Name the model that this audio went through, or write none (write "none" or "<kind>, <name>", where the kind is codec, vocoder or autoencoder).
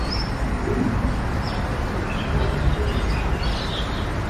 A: none